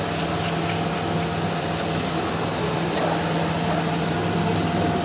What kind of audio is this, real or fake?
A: real